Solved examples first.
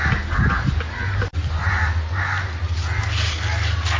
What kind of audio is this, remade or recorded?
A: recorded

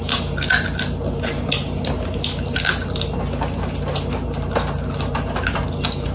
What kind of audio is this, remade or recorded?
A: recorded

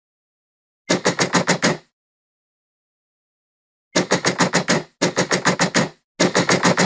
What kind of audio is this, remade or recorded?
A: recorded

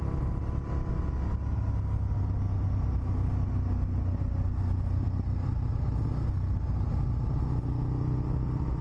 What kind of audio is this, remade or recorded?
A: recorded